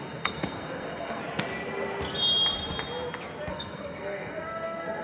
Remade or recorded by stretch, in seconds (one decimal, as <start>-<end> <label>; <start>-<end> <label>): 0.0-1.2 remade; 1.2-3.5 recorded; 3.5-5.0 remade